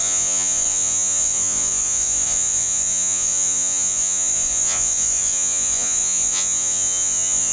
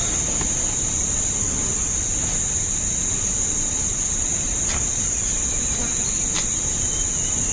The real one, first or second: second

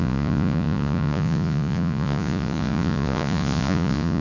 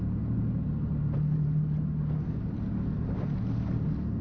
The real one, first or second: second